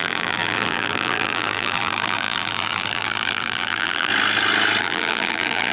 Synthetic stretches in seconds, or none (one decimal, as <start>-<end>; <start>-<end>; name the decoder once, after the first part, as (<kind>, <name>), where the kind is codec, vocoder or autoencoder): 0.0-4.1 (vocoder, BigVGAN v2); 4.8-5.7